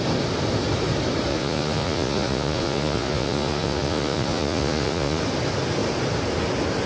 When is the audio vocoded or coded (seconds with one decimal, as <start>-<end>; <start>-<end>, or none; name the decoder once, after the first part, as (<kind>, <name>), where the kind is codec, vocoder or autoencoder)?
1.3-5.2 (vocoder, Vocos)